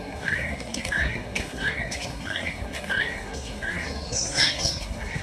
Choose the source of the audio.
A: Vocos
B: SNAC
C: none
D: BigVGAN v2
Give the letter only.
B